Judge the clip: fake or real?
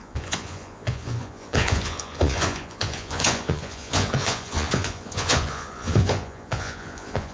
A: fake